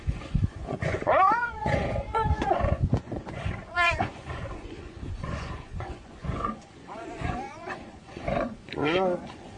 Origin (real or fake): fake